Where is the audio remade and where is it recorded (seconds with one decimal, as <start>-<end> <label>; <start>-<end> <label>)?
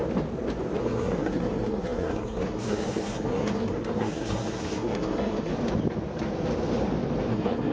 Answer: 0.0-0.8 recorded; 0.8-5.5 remade; 5.5-7.3 recorded; 7.3-7.7 remade